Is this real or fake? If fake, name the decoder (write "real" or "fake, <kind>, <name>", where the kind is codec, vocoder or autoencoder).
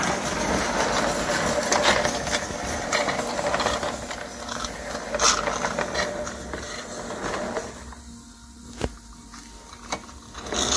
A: real